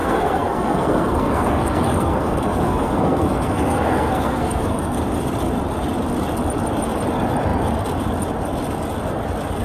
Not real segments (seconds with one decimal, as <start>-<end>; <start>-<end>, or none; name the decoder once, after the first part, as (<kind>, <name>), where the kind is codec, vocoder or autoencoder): 0.0-5.0 (codec, SNAC)